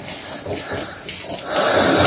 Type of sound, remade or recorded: recorded